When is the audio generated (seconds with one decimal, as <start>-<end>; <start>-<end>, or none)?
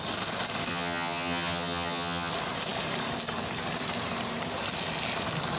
0.7-2.3